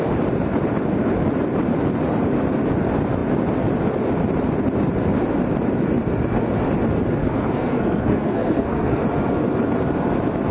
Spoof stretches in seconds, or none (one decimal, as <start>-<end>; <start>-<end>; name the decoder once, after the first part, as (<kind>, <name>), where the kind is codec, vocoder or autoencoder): 7.2-9.0 (codec, SNAC)